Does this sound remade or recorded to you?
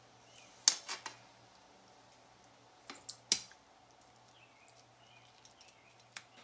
recorded